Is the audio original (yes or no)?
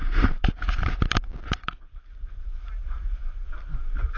yes